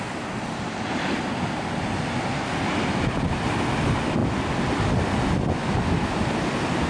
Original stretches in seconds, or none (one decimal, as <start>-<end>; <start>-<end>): 0.0-6.9